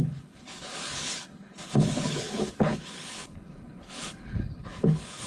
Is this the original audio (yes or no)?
no